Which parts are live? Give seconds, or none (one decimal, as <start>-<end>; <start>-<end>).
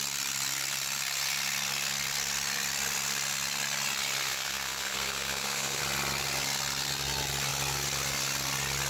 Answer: 0.0-4.3; 5.8-8.9